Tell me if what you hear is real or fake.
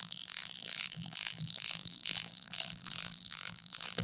fake